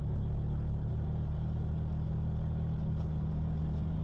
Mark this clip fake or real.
real